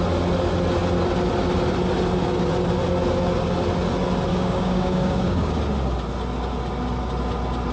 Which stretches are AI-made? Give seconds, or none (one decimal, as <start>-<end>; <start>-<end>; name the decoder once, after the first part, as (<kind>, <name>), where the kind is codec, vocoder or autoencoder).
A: 4.3-5.5 (codec, DAC)

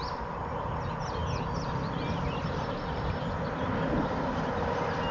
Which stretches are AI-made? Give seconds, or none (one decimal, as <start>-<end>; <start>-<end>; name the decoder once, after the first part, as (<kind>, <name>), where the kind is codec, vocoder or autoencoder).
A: none